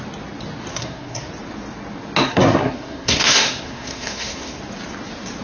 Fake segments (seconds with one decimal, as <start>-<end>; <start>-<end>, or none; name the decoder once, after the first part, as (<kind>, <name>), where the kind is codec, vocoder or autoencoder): 0.7-1.3 (codec, SNAC); 2.2-4.6